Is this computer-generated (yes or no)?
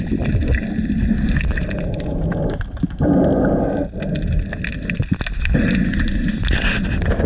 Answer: no